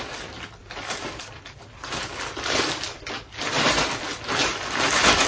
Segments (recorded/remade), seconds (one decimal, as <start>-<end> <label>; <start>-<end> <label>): 0.0-5.3 recorded